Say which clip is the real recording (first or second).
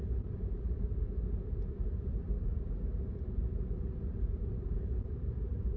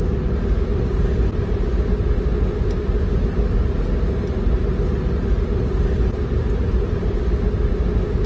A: second